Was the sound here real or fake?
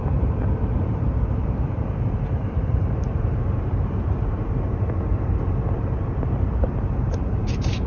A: fake